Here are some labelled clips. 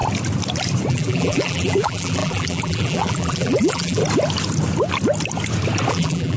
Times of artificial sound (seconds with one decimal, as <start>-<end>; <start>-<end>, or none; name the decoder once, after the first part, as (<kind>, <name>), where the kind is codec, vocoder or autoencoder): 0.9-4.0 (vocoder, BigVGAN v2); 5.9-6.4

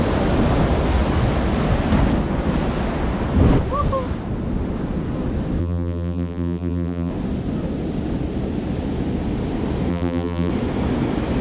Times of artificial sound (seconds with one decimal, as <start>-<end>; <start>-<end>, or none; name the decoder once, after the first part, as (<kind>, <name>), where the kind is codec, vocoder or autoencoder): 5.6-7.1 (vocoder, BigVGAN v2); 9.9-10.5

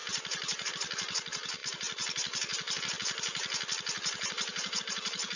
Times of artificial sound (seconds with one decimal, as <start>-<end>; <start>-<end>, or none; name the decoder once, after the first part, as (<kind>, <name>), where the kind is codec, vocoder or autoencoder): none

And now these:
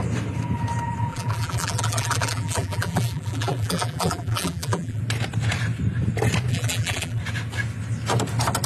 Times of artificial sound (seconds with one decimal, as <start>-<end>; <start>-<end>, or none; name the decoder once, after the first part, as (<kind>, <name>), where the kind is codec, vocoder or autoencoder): 1.1-5.0 (vocoder, BigVGAN v2); 6.5-7.2